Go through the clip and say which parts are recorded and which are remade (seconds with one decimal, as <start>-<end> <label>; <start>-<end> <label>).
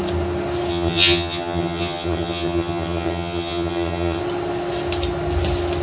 0.0-0.7 recorded; 0.7-4.2 remade; 4.2-5.8 recorded